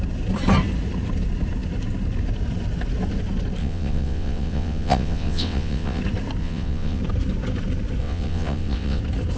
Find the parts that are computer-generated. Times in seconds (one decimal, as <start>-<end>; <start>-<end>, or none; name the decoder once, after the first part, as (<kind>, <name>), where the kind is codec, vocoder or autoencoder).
3.6-6.0 (vocoder, WaveNeXt); 6.4-7.0; 8.0-9.0